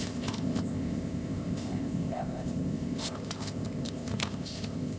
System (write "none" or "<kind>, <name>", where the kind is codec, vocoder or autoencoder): codec, ZipCodec